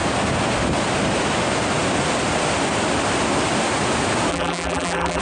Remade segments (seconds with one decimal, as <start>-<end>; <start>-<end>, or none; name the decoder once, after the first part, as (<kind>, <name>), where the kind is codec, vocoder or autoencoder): 4.3-5.2 (vocoder, BigVGAN v2)